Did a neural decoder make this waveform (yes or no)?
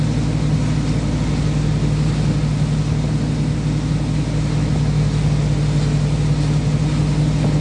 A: no